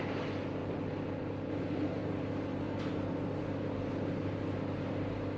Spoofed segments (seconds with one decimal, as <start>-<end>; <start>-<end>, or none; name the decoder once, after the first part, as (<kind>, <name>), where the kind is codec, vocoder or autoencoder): none